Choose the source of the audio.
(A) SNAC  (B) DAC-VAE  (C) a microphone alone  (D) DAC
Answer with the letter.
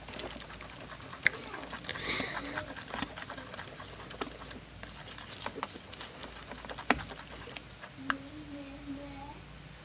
C